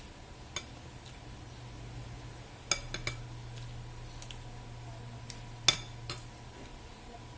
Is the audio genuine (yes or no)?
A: yes